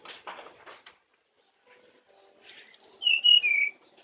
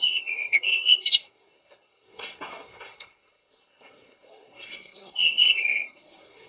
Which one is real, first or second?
first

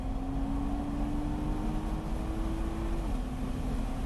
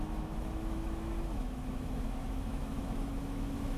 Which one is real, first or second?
first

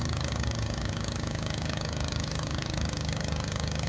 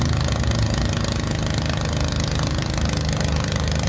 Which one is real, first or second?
second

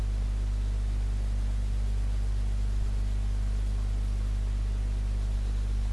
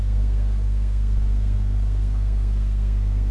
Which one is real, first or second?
first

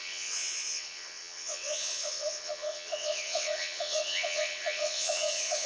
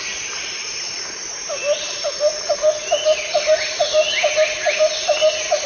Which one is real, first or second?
second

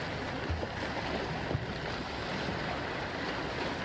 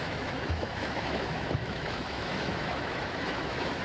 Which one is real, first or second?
first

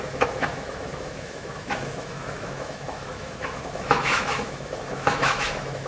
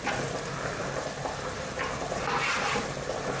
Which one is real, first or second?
second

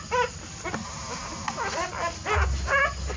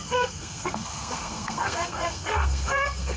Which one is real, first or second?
first